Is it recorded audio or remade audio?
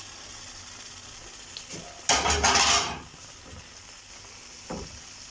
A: recorded